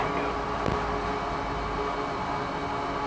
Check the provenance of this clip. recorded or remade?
recorded